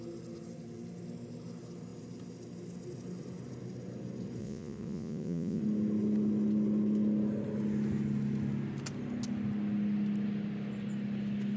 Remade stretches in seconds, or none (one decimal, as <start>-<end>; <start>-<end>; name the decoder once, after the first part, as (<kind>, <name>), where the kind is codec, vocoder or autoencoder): 4.4-5.6 (vocoder, Vocos)